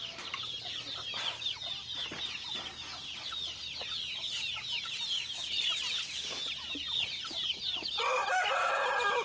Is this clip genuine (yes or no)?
yes